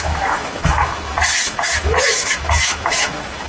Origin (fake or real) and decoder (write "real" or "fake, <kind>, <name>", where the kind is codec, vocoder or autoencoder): fake, autoencoder, DAC-VAE